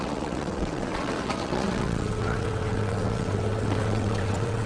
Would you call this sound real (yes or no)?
no